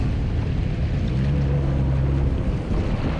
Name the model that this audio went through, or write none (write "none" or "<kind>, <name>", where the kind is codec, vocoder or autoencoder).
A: none